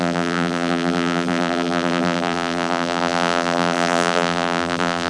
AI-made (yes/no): yes